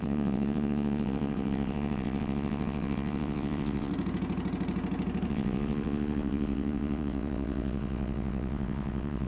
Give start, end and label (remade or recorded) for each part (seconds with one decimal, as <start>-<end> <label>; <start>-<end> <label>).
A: 0.0-3.9 remade; 3.9-5.3 recorded; 5.3-9.3 remade